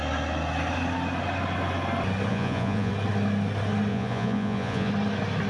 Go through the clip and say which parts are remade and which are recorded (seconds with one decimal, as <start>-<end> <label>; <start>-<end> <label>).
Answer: 0.0-2.3 recorded; 2.3-2.9 remade; 2.9-3.9 recorded; 3.9-4.9 remade; 4.9-5.5 recorded